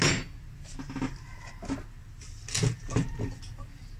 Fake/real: real